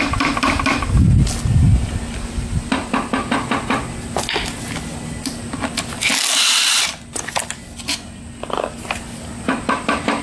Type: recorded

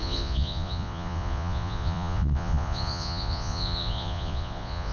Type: remade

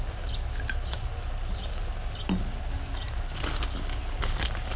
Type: recorded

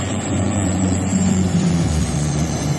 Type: remade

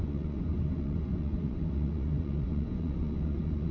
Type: remade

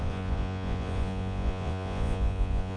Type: remade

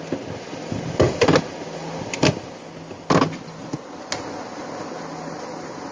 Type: recorded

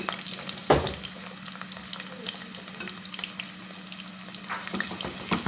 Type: recorded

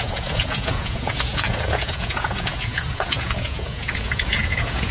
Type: remade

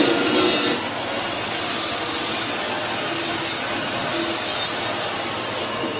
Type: recorded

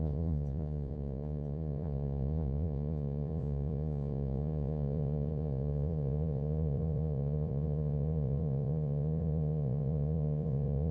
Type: remade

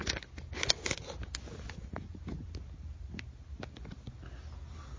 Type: recorded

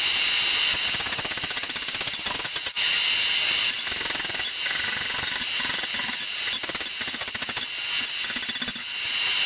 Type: recorded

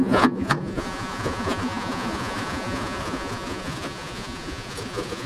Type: remade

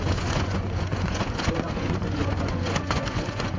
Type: remade